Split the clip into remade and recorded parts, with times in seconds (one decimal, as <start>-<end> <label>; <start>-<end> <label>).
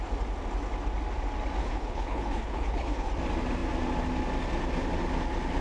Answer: 0.0-1.6 recorded; 1.6-3.1 remade; 3.1-5.6 recorded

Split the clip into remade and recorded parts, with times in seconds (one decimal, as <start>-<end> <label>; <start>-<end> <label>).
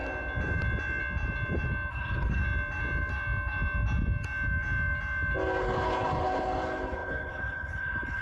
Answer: 0.0-1.9 recorded; 1.9-2.4 remade; 2.4-5.6 recorded; 5.6-8.2 remade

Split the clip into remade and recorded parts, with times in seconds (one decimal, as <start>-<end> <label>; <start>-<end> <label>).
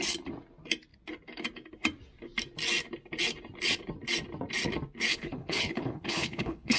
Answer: 0.0-5.1 recorded; 5.1-6.8 remade